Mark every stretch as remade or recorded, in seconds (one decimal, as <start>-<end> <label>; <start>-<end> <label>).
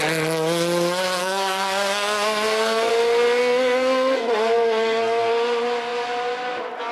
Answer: 0.0-1.2 recorded; 1.2-2.9 remade; 2.9-3.4 recorded; 3.4-5.3 remade; 5.3-6.9 recorded